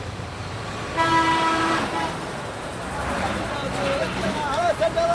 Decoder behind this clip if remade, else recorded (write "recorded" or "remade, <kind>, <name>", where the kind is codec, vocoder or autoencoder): remade, vocoder, BigVGAN v2